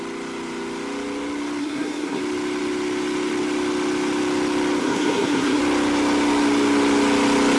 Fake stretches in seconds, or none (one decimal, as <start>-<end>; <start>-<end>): 1.6-2.2; 4.8-5.6